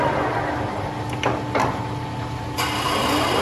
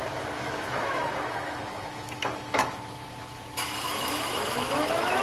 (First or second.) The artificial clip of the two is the second